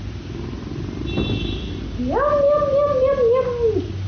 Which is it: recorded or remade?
recorded